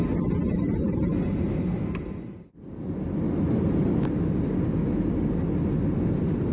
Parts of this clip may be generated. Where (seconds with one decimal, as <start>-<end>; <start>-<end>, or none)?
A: none